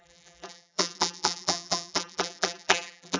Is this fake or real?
fake